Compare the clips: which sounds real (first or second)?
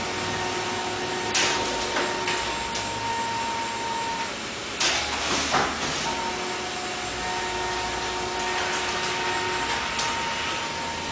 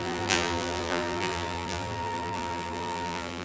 first